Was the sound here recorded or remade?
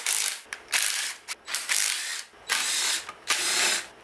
recorded